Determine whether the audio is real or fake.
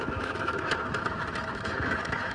fake